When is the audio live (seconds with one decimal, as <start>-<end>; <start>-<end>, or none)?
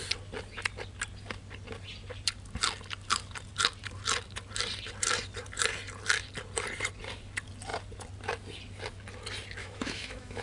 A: 0.0-9.6